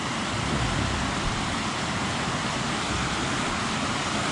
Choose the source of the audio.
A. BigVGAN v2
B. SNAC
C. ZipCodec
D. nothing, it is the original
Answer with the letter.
D